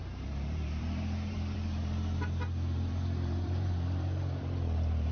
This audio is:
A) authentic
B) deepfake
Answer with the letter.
B